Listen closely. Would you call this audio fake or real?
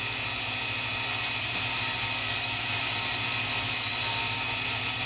real